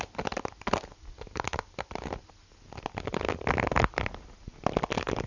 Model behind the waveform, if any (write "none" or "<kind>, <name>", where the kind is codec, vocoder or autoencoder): none